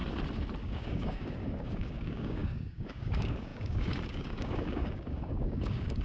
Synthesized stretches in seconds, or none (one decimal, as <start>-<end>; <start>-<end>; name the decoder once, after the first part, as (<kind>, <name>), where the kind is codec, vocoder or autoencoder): 0.6-6.0 (codec, DAC)